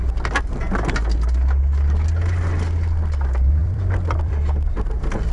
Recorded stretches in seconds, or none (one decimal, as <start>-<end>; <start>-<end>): 0.0-3.6; 4.7-5.3